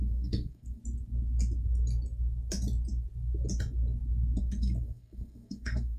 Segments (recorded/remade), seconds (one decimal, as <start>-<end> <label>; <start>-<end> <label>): 0.0-0.8 remade; 0.8-4.4 recorded; 4.4-6.0 remade

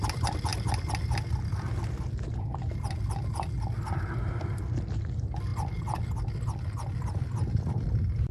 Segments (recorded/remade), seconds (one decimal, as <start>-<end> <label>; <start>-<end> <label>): 0.0-8.3 recorded

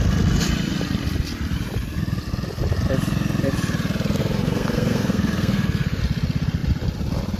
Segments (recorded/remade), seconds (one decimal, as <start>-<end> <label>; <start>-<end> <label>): 0.0-4.2 recorded; 4.2-6.0 remade; 6.0-7.4 recorded

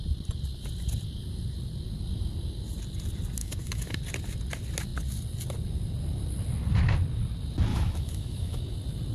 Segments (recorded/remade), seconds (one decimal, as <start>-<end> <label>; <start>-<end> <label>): 0.0-3.4 recorded; 3.4-4.0 remade; 4.0-7.7 recorded; 7.7-8.6 remade; 8.6-9.1 recorded

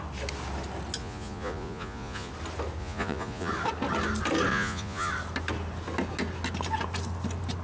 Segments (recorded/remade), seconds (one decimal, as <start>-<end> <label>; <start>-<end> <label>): 0.0-1.0 recorded; 1.0-2.3 remade; 2.3-2.8 recorded; 2.8-3.5 remade; 3.5-4.5 recorded; 4.5-5.1 remade; 5.1-7.6 recorded

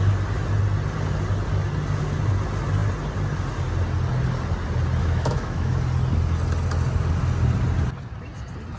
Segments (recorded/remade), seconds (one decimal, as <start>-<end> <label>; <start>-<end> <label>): 0.0-5.0 recorded; 5.0-5.7 remade; 5.7-8.8 recorded

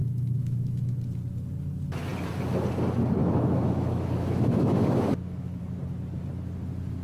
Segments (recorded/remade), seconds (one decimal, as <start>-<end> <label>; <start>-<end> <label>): 0.0-0.9 remade; 0.9-3.2 recorded; 3.2-5.6 remade; 5.6-7.0 recorded